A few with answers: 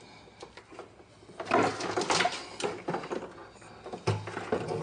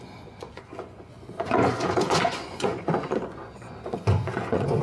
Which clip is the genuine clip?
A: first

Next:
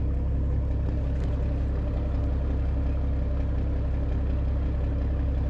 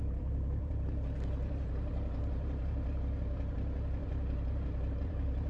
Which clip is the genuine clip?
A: first